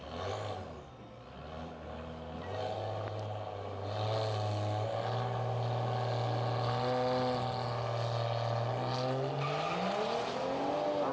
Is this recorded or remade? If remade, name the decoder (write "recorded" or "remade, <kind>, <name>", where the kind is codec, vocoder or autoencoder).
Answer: recorded